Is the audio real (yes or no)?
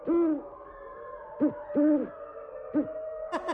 yes